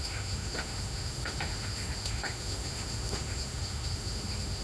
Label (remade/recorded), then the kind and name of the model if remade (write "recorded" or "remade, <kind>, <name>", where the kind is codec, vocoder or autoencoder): remade, autoencoder, DAC-VAE